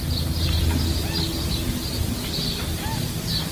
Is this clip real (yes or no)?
yes